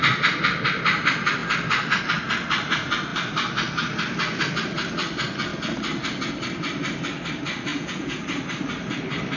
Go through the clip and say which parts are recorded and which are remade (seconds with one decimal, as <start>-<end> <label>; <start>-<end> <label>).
0.0-7.7 recorded; 7.7-8.2 remade; 8.2-9.4 recorded